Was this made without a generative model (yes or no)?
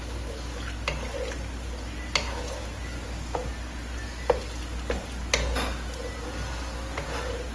yes